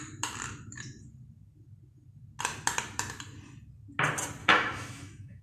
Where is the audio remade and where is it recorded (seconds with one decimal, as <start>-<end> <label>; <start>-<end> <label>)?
0.0-4.4 recorded; 4.4-5.4 remade